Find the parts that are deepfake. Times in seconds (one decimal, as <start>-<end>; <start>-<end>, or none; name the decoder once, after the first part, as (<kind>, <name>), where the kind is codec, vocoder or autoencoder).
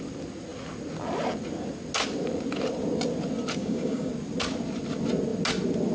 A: 3.6-4.1 (codec, DAC)